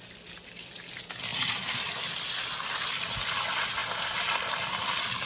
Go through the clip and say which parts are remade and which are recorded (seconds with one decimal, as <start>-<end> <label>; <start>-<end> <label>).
0.0-1.3 recorded; 1.3-1.8 remade; 1.8-3.8 recorded; 3.8-4.5 remade; 4.5-5.3 recorded

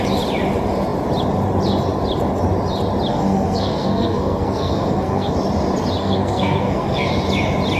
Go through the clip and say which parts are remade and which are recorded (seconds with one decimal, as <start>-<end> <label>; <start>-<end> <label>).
0.0-3.1 recorded; 3.1-5.3 remade; 5.3-6.0 recorded; 6.0-7.1 remade; 7.1-7.8 recorded

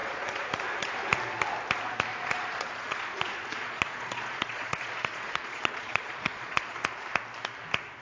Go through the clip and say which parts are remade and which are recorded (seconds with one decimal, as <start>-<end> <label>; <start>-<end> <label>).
0.0-0.5 remade; 0.5-2.1 recorded; 2.1-6.8 remade; 6.8-8.0 recorded

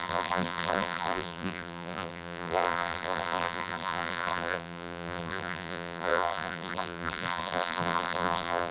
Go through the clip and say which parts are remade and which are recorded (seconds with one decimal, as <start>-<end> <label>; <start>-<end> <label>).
0.0-8.7 remade

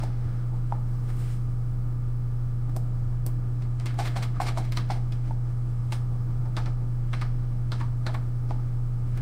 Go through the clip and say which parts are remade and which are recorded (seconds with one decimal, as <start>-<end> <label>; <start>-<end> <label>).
0.0-9.2 remade

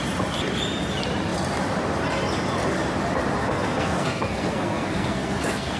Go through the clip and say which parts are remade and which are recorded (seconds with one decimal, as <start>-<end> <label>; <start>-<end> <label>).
0.0-3.4 recorded; 3.4-5.8 remade